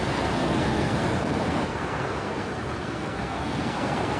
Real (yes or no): no